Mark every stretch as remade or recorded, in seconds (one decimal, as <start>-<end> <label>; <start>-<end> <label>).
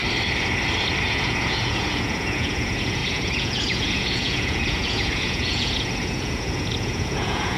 0.0-1.0 recorded; 1.0-7.6 remade